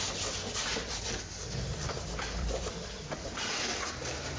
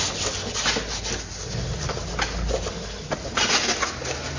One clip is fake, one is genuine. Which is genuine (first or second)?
second